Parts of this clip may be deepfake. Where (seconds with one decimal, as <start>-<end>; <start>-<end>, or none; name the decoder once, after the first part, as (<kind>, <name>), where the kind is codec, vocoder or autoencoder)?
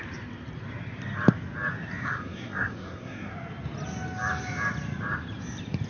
2.0-3.3 (codec, SNAC)